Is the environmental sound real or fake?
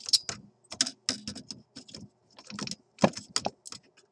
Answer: real